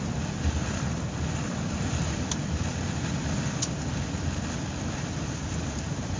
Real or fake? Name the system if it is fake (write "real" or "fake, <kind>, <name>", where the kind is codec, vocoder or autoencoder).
fake, vocoder, BigVGAN v2